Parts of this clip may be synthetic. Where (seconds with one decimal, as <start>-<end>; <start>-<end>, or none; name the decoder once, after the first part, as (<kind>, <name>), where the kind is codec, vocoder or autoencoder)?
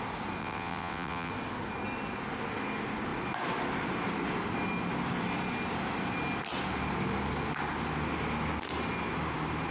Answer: 0.4-1.3 (vocoder, WaveNeXt)